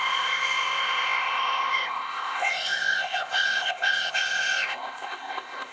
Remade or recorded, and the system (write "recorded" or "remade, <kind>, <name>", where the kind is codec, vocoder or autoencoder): remade, codec, ZipCodec